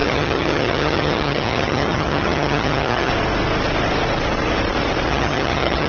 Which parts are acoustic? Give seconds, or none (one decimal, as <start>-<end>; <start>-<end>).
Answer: 3.1-5.1